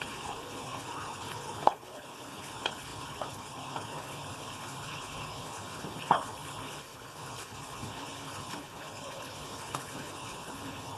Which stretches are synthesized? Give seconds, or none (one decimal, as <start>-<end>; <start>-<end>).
0.0-11.0